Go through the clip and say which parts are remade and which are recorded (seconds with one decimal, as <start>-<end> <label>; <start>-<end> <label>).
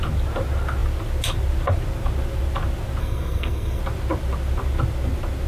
0.0-3.0 recorded; 3.0-3.8 remade; 3.8-5.5 recorded